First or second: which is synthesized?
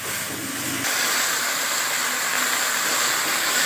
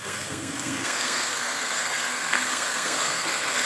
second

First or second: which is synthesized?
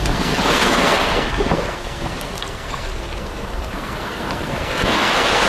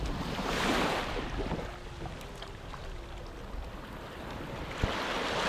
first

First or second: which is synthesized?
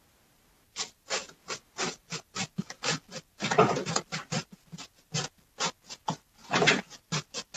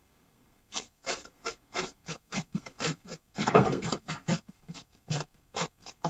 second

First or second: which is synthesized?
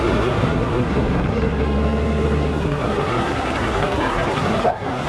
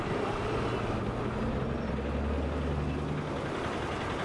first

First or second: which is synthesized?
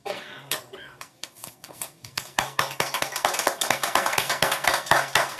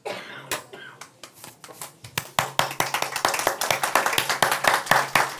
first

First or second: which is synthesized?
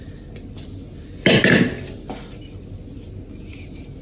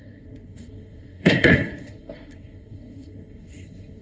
second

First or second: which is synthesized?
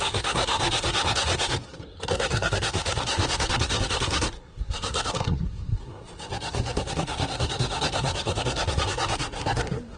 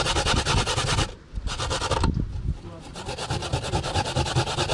first